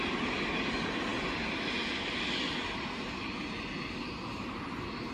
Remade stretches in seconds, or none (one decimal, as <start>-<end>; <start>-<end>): none